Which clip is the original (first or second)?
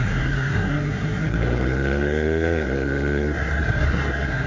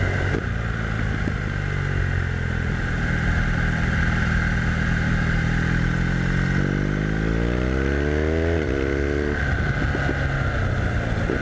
second